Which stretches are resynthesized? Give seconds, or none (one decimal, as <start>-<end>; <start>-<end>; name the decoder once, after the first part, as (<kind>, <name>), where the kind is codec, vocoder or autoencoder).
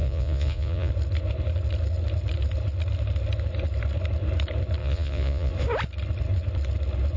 0.0-0.9 (vocoder, Vocos); 4.8-5.5